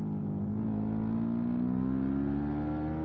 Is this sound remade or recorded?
recorded